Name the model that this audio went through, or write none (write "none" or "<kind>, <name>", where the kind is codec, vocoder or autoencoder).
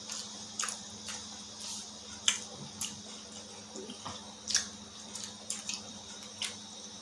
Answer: none